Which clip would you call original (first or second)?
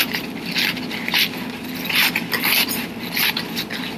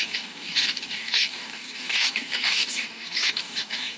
first